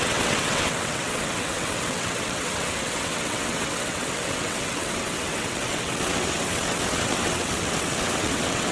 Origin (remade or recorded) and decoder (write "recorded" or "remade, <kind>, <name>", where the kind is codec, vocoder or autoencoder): remade, vocoder, WaveNeXt